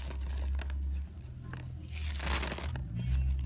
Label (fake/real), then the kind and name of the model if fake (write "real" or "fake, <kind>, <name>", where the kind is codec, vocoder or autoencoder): real